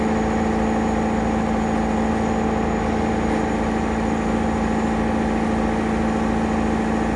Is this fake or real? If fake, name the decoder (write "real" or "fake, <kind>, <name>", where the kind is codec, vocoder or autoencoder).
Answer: real